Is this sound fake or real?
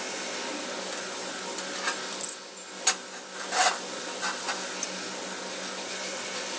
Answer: real